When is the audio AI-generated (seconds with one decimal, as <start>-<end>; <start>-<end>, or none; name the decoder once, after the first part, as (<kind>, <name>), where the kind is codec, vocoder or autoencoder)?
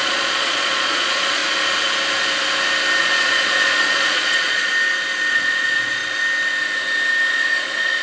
0.0-1.4 (vocoder, Vocos); 3.0-4.7; 5.3-6.0; 7.3-8.0